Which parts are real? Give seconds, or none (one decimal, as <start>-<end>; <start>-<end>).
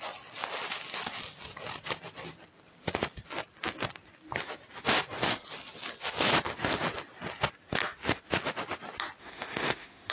0.0-9.2